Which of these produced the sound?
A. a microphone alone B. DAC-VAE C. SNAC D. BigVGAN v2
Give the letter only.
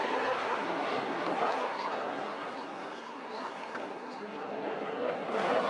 C